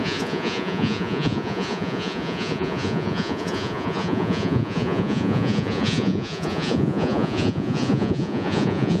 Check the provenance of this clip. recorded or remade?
remade